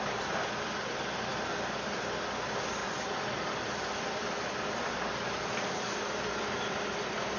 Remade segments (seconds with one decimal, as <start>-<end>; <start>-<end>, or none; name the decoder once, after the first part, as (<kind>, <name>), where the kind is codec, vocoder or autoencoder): 2.8-5.9 (vocoder, BigVGAN v2)

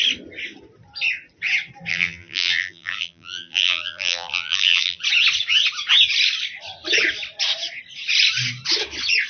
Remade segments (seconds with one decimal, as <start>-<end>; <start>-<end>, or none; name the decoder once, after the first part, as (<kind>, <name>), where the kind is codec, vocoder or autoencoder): 1.9-5.0 (vocoder, BigVGAN v2)

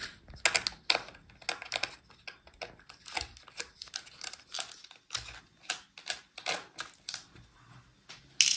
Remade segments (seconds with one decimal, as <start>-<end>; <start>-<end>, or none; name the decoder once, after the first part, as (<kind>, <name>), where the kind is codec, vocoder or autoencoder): none

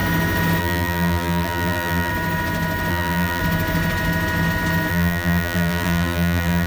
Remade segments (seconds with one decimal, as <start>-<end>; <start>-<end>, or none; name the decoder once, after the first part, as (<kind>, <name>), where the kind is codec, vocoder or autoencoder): 0.6-2.1 (vocoder, BigVGAN v2); 2.9-3.4; 4.9-6.7